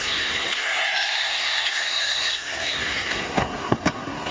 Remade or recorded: remade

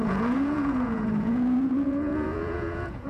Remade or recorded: remade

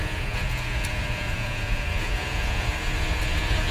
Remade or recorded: remade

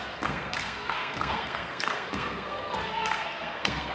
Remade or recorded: remade